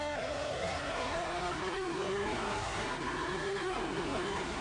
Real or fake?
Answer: fake